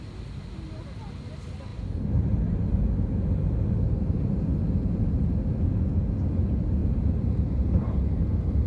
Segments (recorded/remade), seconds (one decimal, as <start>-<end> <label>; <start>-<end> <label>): 0.0-8.7 recorded